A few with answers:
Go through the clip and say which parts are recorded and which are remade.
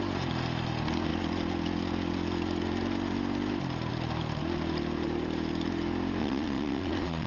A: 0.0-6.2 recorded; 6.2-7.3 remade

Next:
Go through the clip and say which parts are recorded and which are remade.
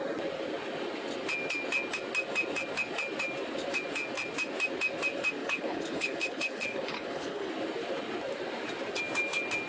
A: 0.0-5.4 recorded; 5.4-7.5 remade; 7.5-9.7 recorded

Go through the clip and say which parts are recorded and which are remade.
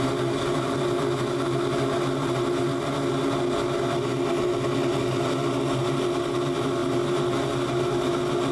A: 0.0-8.5 recorded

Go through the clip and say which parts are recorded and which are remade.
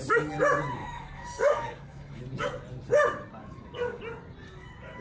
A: 0.0-0.8 recorded; 0.8-2.2 remade; 2.2-3.4 recorded; 3.4-4.0 remade; 4.0-5.0 recorded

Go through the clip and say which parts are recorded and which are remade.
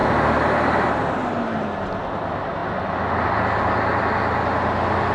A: 0.0-5.1 recorded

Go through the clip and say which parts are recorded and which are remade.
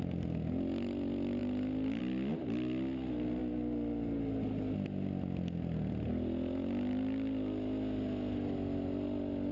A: 0.0-9.5 recorded